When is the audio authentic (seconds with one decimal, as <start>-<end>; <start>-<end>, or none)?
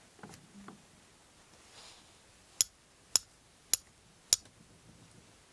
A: 0.0-5.5